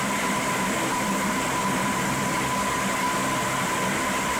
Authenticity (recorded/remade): remade